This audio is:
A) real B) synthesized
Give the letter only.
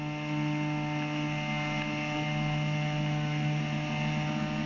A